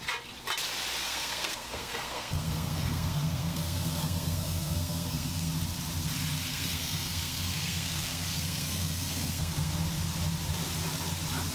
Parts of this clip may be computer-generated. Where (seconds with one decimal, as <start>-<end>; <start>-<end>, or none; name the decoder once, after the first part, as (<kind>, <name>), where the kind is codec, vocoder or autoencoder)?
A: 1.0-5.5 (codec, SNAC); 6.5-9.7